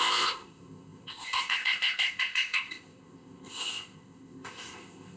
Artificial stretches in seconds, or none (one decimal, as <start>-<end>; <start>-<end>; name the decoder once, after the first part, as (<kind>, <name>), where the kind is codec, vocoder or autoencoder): 0.0-5.2 (codec, ZipCodec)